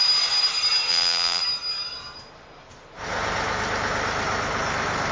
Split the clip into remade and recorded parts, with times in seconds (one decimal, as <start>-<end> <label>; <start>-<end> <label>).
0.0-0.9 recorded; 0.9-1.4 remade; 1.4-5.1 recorded